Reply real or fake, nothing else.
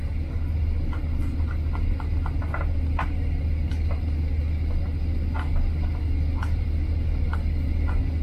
real